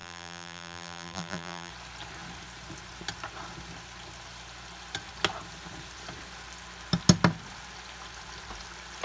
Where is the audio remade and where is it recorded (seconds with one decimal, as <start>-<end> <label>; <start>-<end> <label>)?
0.0-1.7 remade; 1.7-9.0 recorded

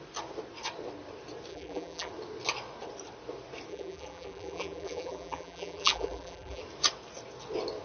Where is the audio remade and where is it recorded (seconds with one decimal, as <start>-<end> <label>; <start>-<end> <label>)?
0.0-1.5 recorded; 1.5-2.1 remade; 2.1-3.7 recorded; 3.7-6.6 remade; 6.6-7.8 recorded

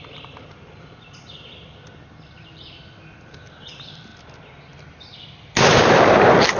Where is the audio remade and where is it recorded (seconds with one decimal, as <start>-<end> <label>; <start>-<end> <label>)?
0.0-4.1 remade; 4.1-5.9 recorded; 5.9-6.6 remade

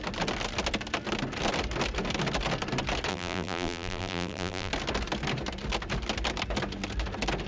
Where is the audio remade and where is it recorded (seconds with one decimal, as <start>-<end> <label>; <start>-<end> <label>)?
0.0-3.1 recorded; 3.1-4.7 remade; 4.7-7.5 recorded

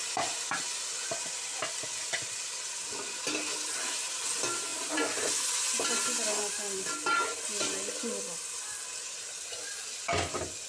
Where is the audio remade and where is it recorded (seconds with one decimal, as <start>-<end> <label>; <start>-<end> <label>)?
0.0-4.7 recorded; 4.7-5.3 remade; 5.3-10.7 recorded

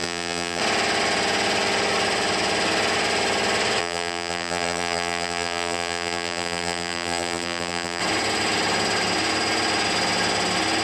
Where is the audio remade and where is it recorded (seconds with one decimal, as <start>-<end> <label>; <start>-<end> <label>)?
0.0-0.6 remade; 0.6-3.8 recorded; 3.8-8.0 remade; 8.0-10.8 recorded